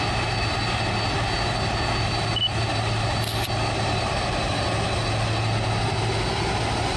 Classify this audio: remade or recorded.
recorded